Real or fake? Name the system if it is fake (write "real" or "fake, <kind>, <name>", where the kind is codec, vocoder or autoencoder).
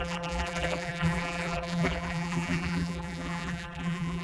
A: fake, vocoder, BigVGAN v2